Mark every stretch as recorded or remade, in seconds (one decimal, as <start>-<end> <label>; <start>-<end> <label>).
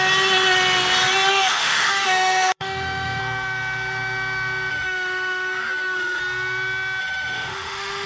0.0-1.3 recorded; 1.3-3.2 remade; 3.2-4.7 recorded; 4.7-6.2 remade; 6.2-7.0 recorded; 7.0-8.1 remade